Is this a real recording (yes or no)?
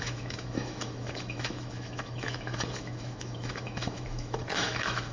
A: no